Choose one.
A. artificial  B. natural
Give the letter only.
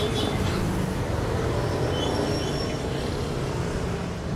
B